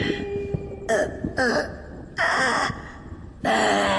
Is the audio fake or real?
real